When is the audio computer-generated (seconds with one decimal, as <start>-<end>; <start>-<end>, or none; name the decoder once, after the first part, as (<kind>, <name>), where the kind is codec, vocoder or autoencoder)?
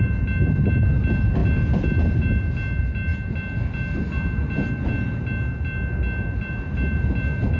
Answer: none